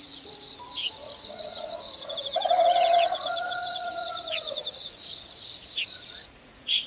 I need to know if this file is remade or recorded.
remade